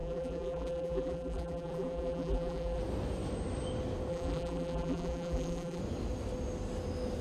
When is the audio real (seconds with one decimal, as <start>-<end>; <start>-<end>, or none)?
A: 2.8-4.1; 5.8-7.2